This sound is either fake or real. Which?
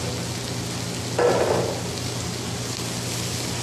real